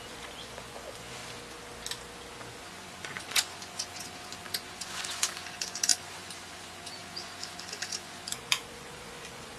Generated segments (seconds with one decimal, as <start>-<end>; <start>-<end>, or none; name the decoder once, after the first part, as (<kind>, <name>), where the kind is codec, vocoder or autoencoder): 0.0-1.2 (vocoder, Vocos); 2.5-9.6